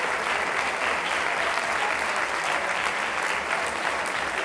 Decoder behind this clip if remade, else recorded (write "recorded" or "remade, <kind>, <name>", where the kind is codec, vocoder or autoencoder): recorded